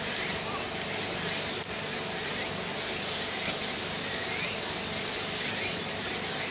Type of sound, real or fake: real